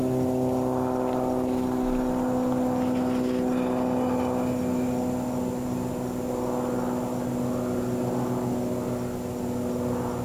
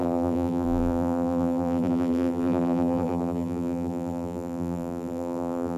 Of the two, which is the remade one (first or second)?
second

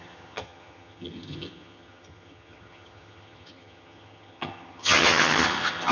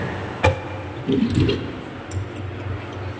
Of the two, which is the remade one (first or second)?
first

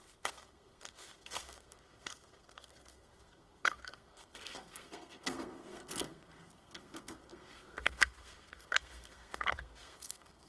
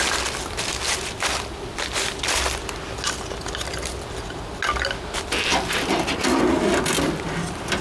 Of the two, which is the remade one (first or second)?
first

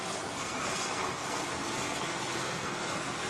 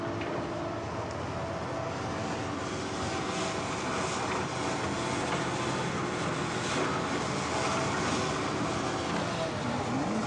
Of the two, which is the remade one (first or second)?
first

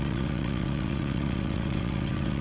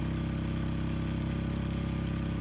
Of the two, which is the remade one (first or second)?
first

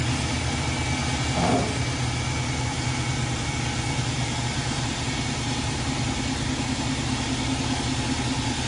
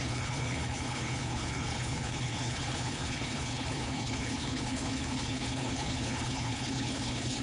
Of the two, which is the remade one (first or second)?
second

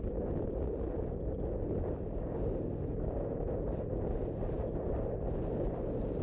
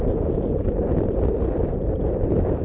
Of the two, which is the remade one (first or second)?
second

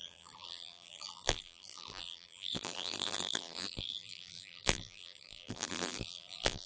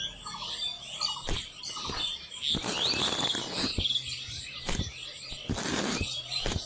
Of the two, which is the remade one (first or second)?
first